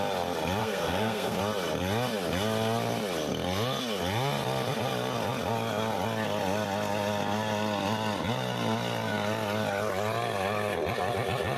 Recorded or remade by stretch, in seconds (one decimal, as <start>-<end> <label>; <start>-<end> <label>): 0.0-0.6 recorded; 0.6-1.4 remade; 1.4-11.6 recorded